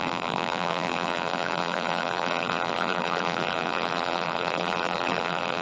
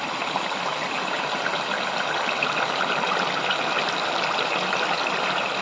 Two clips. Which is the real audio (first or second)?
second